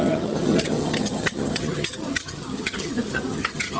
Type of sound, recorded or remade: remade